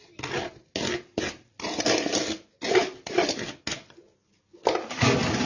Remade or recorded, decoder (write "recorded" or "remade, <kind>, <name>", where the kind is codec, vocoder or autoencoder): recorded